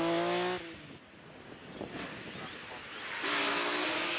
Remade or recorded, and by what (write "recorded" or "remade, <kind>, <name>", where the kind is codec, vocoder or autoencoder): recorded